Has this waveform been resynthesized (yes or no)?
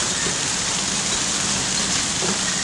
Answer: no